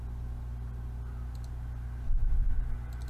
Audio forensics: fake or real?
real